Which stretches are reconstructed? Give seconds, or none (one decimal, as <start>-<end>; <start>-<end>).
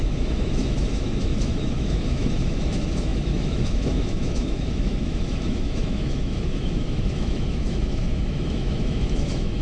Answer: 0.0-9.6